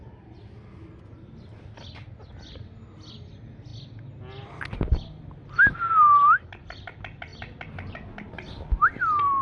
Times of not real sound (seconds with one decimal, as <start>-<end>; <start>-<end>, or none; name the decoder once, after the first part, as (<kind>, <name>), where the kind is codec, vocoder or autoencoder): none